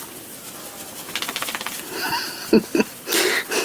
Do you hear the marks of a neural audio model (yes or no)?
no